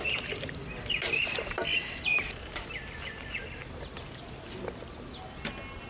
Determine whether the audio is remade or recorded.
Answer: recorded